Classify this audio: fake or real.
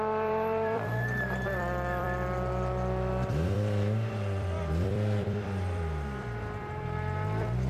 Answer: fake